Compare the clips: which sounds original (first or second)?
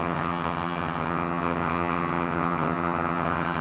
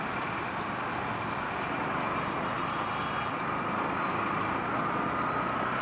second